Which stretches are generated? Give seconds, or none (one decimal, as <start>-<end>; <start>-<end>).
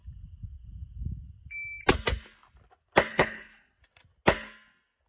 3.1-3.8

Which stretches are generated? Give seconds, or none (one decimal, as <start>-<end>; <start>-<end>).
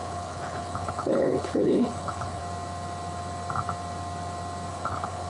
0.0-2.4; 4.7-5.3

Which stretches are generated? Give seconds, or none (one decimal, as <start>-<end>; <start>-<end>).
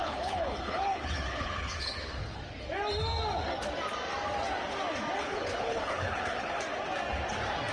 0.0-2.4; 5.2-6.6